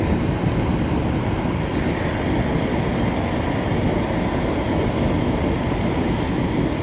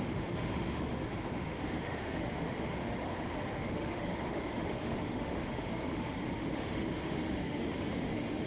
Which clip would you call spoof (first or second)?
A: second